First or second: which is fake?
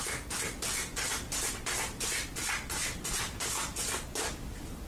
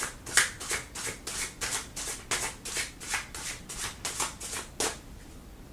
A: first